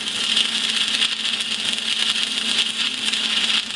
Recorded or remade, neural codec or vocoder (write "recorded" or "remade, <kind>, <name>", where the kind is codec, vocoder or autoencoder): recorded